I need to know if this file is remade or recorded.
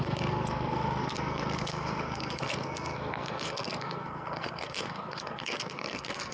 remade